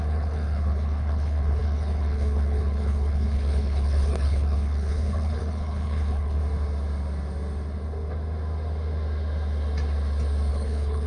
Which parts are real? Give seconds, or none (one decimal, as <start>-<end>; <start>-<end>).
6.4-10.5